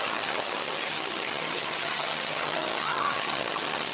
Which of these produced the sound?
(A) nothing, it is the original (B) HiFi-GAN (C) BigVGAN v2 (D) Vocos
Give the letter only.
B